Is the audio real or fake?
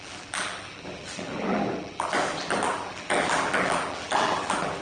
fake